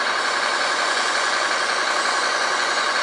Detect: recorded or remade remade